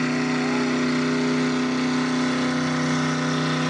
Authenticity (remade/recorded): recorded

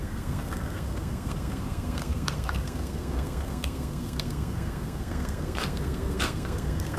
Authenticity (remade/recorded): remade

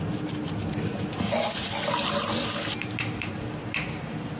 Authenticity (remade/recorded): recorded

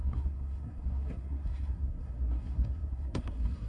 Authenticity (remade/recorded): remade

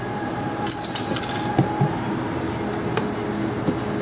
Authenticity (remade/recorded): recorded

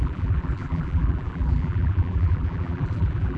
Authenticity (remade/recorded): remade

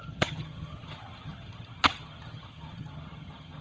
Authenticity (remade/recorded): remade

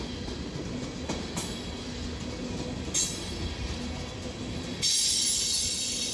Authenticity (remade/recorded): recorded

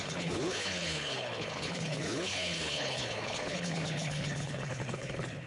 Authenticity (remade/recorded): remade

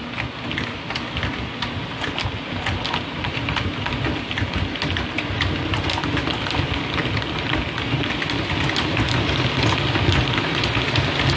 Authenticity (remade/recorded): recorded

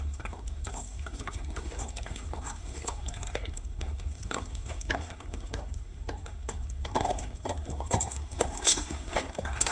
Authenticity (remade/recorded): remade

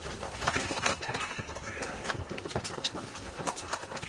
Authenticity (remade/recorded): remade